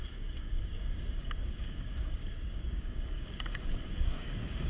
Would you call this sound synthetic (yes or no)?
yes